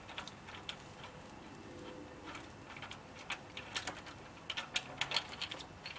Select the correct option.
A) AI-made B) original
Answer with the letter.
B